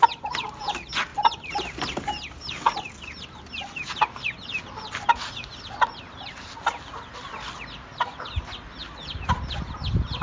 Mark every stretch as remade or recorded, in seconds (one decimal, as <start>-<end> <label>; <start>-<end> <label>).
0.0-1.1 recorded; 1.1-2.6 remade; 2.6-8.8 recorded; 8.8-9.7 remade; 9.7-10.2 recorded